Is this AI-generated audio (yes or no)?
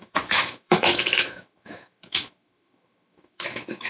yes